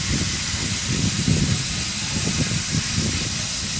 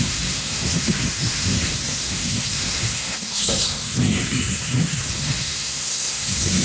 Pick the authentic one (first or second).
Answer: first